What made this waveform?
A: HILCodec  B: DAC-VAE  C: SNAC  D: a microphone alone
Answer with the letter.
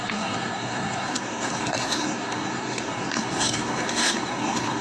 C